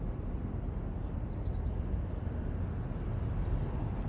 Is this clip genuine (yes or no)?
yes